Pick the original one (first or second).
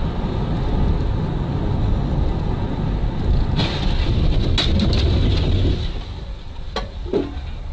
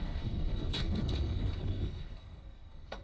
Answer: first